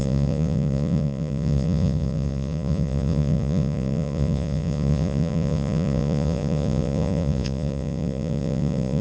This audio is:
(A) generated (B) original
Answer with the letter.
A